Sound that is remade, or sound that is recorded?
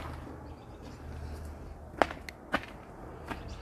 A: recorded